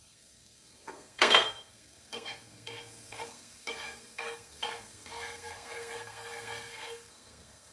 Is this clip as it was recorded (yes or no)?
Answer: no